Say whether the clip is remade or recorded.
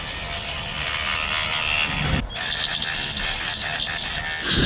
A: recorded